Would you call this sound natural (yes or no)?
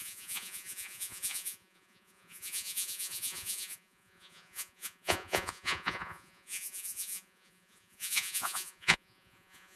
no